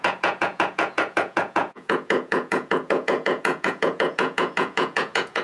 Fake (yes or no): yes